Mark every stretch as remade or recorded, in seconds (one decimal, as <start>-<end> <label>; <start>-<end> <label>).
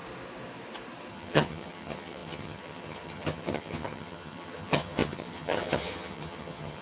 0.0-1.1 recorded; 1.1-6.8 remade